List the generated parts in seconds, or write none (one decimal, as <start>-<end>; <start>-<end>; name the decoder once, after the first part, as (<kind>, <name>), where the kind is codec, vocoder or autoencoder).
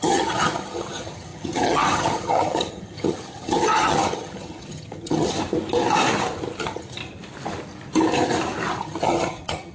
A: 0.0-5.4 (vocoder, HiFi-GAN); 6.6-7.0; 8.8-9.7